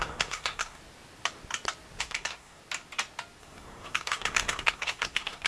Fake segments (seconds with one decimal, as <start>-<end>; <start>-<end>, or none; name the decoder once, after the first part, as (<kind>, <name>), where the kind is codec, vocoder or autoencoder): 0.0-0.8 (codec, SNAC); 2.0-2.6; 3.4-5.5

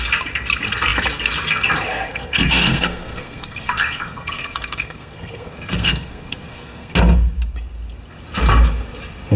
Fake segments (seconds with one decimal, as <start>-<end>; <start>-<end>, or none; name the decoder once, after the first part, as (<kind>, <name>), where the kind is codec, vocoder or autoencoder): 1.9-6.9 (codec, SNAC)

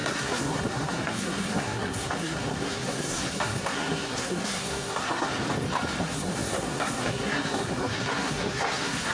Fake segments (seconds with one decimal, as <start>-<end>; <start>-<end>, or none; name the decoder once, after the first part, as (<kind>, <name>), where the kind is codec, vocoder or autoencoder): 0.0-5.3 (codec, SNAC); 6.0-9.1

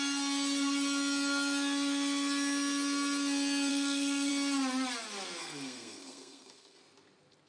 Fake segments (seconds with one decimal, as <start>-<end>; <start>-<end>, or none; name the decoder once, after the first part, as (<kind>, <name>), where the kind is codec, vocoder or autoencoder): 3.7-4.3 (codec, SNAC); 5.4-6.8

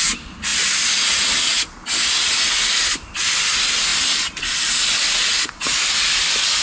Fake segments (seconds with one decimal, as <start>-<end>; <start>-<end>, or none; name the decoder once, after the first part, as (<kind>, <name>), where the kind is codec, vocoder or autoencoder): none

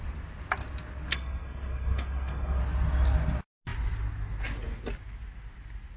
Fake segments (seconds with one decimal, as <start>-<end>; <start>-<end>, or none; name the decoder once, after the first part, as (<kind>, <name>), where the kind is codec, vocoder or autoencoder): 1.1-2.6 (codec, SNAC)

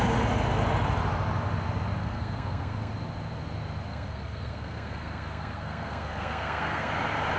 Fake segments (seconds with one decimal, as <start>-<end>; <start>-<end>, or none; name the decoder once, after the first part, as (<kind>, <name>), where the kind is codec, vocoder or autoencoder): 2.0-2.9 (codec, SNAC); 3.9-6.9